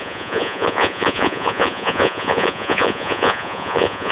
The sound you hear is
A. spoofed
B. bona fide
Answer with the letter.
A